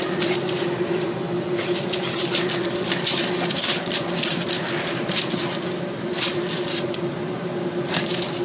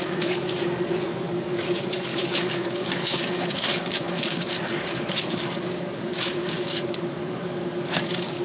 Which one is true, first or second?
first